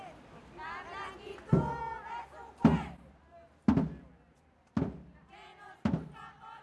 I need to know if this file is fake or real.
real